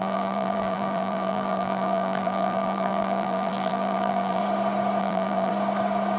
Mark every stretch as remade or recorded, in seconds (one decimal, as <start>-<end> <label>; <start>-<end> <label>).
0.0-4.4 remade; 4.4-5.0 recorded; 5.0-5.5 remade; 5.5-6.2 recorded